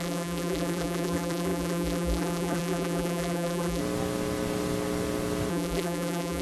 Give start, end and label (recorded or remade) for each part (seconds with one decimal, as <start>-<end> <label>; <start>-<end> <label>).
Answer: 0.0-3.8 remade; 3.8-5.5 recorded; 5.5-6.4 remade